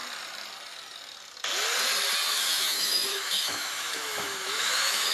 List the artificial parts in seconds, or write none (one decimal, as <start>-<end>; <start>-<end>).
2.3-5.1